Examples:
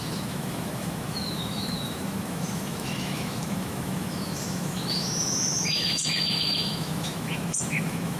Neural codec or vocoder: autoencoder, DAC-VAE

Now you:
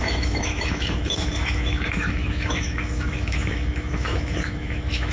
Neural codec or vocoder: autoencoder, DAC-VAE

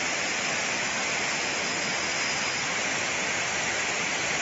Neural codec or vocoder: none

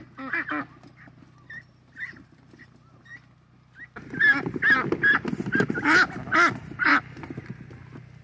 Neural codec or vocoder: none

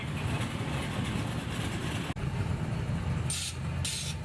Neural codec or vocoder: none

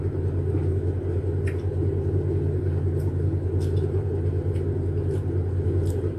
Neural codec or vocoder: none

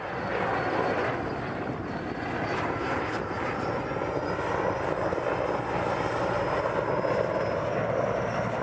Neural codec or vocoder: none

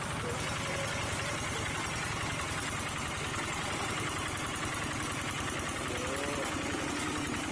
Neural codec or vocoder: none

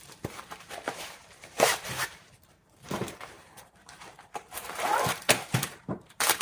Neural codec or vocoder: vocoder, BigVGAN v2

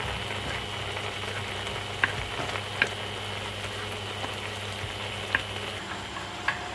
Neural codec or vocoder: none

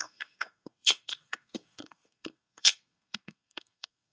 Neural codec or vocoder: codec, SNAC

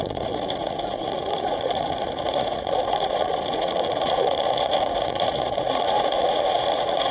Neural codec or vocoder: vocoder, Vocos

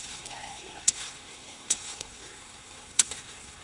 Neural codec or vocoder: codec, SNAC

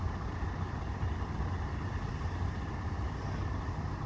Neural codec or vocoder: none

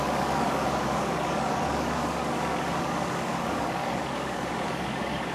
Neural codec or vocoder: codec, DAC